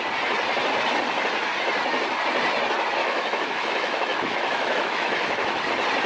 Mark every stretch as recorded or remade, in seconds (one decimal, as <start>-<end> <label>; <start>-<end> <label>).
0.0-3.0 recorded; 3.0-5.6 remade; 5.6-6.1 recorded